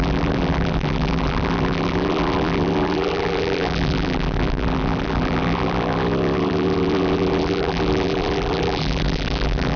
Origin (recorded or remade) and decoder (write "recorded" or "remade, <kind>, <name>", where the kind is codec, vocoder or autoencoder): remade, vocoder, BigVGAN v2